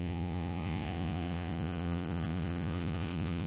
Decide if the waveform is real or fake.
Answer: fake